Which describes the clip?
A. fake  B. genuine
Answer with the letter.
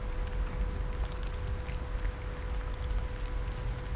B